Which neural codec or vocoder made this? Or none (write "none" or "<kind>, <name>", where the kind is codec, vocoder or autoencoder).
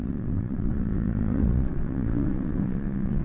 vocoder, WaveNeXt